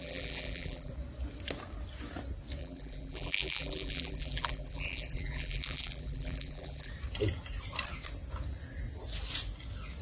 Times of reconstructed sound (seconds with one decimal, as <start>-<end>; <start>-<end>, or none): 0.0-0.9; 2.6-6.9